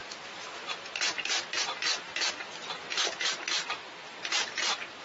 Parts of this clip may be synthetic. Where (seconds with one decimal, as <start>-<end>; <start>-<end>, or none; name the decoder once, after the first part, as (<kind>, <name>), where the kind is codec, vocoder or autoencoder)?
1.1-2.1 (vocoder, BigVGAN v2)